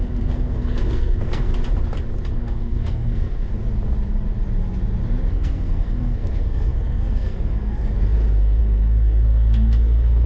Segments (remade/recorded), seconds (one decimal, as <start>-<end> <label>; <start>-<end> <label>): 0.0-1.5 remade; 1.5-2.3 recorded; 2.3-3.5 remade; 3.5-5.3 recorded; 5.3-10.3 remade